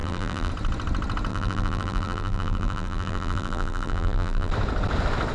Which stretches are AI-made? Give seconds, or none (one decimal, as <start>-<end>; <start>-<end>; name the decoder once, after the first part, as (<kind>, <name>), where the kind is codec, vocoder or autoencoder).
0.0-0.5 (vocoder, BigVGAN v2); 1.3-4.5

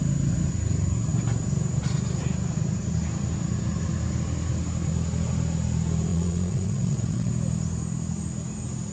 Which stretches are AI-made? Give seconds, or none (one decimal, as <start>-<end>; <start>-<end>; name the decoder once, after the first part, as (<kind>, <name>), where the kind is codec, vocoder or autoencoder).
6.1-7.3 (vocoder, Vocos)

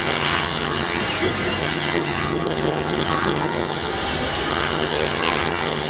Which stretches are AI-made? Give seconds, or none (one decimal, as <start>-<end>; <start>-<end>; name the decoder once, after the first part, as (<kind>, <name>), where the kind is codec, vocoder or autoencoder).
0.0-1.0 (vocoder, HiFi-GAN); 1.6-3.9; 4.5-5.9

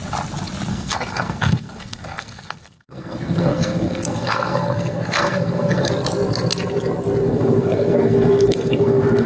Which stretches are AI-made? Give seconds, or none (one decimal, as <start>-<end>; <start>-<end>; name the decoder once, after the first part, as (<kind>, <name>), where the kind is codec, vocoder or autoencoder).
0.7-5.9 (codec, SNAC); 7.2-9.3

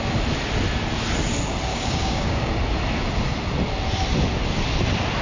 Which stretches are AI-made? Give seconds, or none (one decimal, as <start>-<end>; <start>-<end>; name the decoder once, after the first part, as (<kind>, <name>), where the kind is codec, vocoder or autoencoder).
1.7-2.5 (codec, DAC)

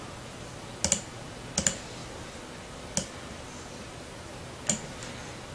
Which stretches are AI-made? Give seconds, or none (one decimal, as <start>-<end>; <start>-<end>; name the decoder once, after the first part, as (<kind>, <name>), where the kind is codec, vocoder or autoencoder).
none

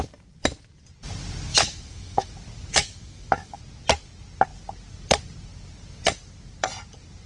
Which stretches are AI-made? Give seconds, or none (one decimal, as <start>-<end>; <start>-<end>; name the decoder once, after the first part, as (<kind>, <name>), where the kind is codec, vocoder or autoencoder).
1.5-2.3 (autoencoder, DAC-VAE); 2.7-3.6